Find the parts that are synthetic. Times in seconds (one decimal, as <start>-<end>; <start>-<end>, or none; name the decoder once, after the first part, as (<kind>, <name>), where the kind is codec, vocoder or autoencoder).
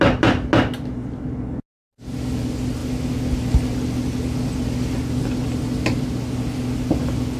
none